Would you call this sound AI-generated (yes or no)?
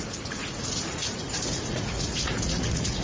yes